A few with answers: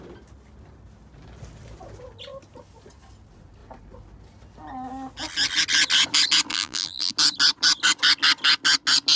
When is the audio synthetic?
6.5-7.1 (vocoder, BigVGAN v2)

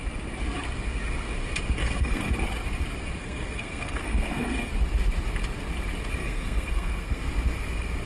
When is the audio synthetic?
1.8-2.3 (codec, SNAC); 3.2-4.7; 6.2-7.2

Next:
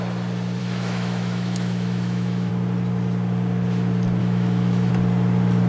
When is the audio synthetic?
0.6-2.5 (autoencoder, DAC-VAE); 4.2-4.9

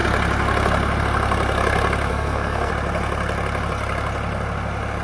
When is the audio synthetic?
2.1-2.7 (codec, SNAC)